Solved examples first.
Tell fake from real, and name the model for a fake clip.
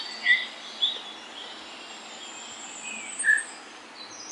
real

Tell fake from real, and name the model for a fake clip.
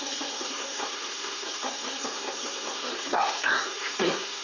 fake, codec, SNAC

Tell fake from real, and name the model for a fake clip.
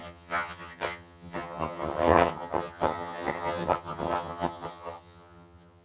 fake, vocoder, HiFi-GAN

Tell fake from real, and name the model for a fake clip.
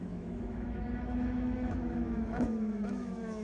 fake, autoencoder, DAC-VAE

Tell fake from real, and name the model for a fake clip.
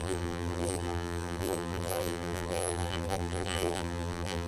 fake, vocoder, BigVGAN v2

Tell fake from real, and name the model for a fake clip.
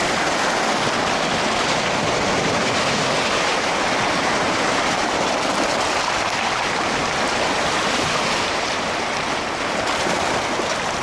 real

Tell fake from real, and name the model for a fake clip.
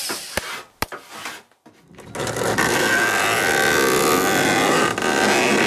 real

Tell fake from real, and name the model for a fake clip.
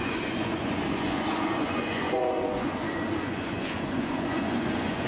fake, vocoder, Vocos